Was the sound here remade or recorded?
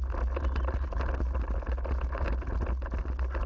recorded